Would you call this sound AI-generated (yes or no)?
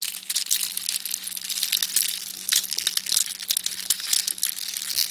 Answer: no